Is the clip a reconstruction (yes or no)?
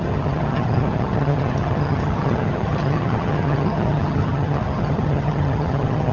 yes